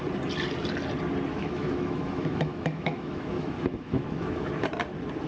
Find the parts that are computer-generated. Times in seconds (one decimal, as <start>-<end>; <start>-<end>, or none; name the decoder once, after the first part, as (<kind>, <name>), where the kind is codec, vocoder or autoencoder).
1.3-4.5 (autoencoder, DAC-VAE)